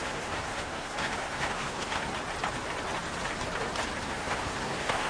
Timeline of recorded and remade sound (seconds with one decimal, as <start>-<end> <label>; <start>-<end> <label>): 0.0-2.1 remade; 2.1-4.0 recorded; 4.0-5.1 remade